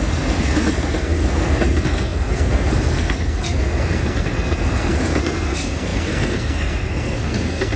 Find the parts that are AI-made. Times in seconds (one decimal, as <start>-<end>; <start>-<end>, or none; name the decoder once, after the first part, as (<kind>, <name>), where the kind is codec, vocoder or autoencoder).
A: 0.0-7.8 (codec, SNAC)